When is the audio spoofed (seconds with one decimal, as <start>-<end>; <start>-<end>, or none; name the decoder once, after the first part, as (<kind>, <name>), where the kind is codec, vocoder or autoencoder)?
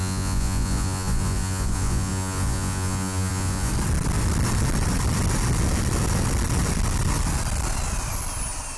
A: 0.0-3.7 (vocoder, Vocos)